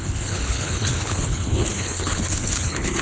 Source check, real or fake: fake